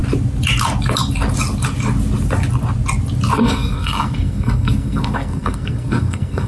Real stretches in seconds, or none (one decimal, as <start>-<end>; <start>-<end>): 0.0-3.4